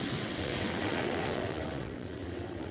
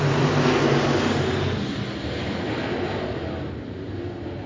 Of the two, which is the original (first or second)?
second